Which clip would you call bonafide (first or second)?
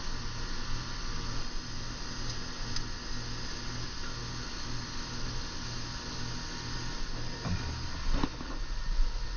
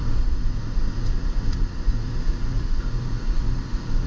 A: first